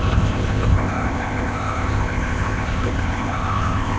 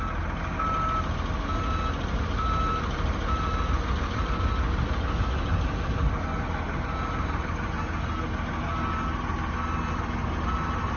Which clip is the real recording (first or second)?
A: second